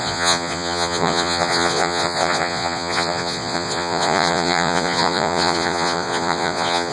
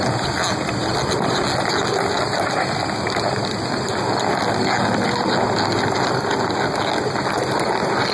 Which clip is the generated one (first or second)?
first